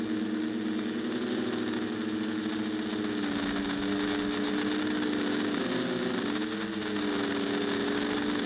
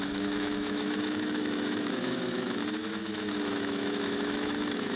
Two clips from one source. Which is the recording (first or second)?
first